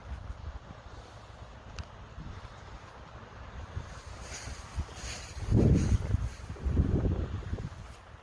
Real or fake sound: fake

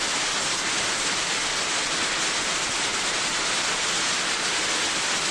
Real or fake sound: real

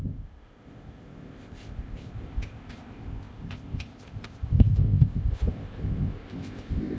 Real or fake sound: fake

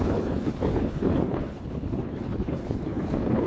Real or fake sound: fake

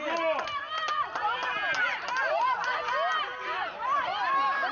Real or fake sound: real